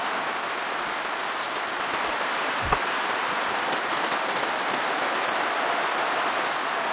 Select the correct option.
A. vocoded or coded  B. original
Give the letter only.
B